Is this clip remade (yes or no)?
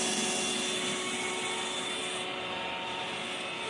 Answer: no